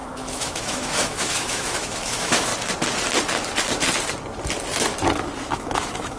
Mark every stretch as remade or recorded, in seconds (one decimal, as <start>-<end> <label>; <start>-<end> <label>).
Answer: 0.0-2.5 remade; 2.5-5.5 recorded; 5.5-6.2 remade